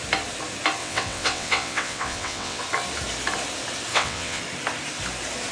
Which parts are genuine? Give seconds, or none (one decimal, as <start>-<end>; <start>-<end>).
0.0-0.8; 2.6-3.9; 4.4-5.5